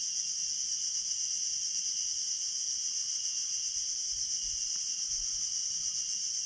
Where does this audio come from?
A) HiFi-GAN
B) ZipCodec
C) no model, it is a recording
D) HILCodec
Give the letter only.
C